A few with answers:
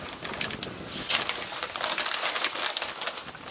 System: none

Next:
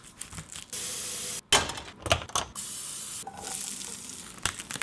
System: none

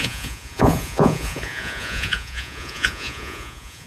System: vocoder, Vocos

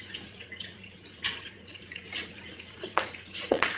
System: vocoder, Vocos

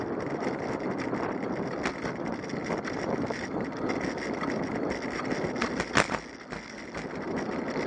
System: none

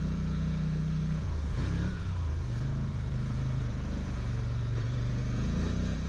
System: vocoder, Vocos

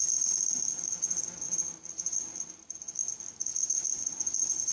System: none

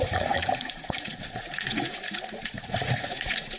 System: vocoder, Vocos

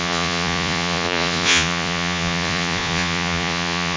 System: vocoder, Vocos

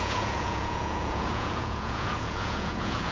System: vocoder, Vocos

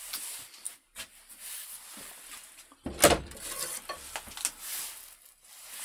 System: none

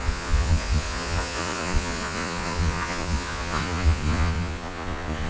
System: vocoder, Vocos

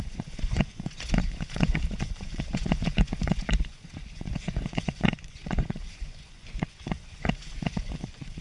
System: vocoder, Vocos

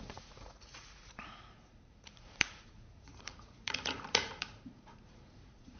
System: vocoder, Vocos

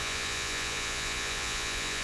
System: vocoder, Vocos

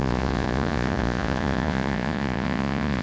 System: vocoder, Vocos